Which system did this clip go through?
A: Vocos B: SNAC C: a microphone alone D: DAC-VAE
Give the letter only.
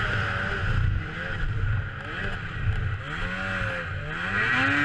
C